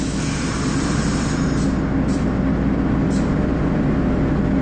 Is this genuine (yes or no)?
yes